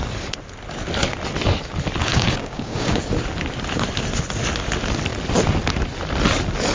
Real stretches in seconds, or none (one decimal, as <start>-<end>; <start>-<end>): 0.0-2.0; 3.0-6.7